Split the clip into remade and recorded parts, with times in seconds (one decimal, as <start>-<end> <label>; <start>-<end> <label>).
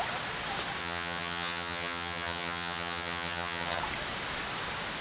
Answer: 0.0-0.8 recorded; 0.8-3.8 remade; 3.8-5.0 recorded